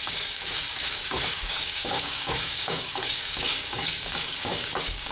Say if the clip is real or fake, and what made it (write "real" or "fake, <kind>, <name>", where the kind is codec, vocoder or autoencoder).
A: fake, codec, DAC